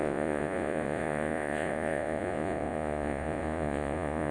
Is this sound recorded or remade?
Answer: remade